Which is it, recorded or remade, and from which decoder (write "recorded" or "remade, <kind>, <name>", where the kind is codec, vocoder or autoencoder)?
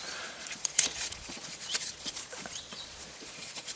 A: remade, vocoder, Vocos